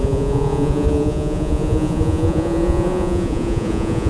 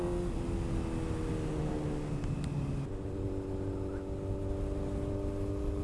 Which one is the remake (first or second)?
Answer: first